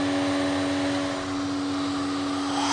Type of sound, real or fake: real